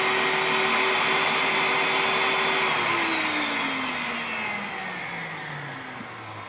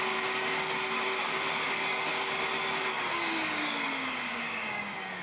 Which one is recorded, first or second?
first